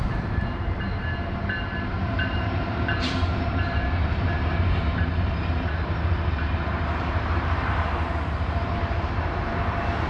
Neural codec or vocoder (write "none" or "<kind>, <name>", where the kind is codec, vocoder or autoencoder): vocoder, BigVGAN v2